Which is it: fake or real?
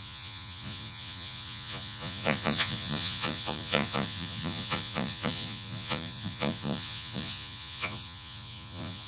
fake